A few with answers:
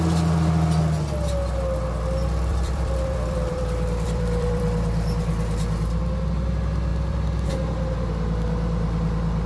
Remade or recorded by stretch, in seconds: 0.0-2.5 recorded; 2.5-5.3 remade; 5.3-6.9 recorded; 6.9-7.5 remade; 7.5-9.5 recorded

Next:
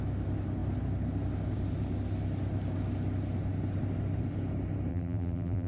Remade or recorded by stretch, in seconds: 0.0-4.9 recorded; 4.9-5.7 remade

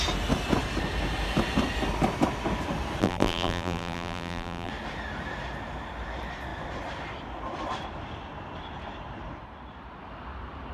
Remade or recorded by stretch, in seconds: 0.0-3.0 recorded; 3.0-4.7 remade; 4.7-10.7 recorded

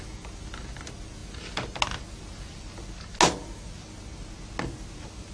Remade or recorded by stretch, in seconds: 0.0-5.3 recorded